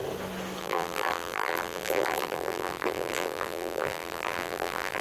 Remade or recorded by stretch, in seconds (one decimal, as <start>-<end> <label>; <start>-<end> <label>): 0.0-0.6 recorded; 0.6-5.0 remade